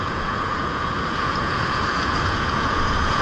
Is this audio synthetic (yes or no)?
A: yes